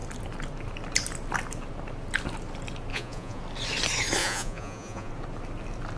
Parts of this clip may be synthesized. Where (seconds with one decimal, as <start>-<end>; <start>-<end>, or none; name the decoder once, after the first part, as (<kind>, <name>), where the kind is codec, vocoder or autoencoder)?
2.9-3.4 (vocoder, Vocos); 4.2-5.1